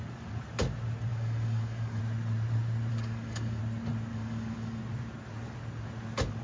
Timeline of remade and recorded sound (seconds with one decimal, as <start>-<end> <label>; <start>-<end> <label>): 0.0-1.1 recorded; 1.1-2.0 remade; 2.0-2.9 recorded; 2.9-3.6 remade; 3.6-4.1 recorded; 4.1-4.8 remade; 4.8-6.4 recorded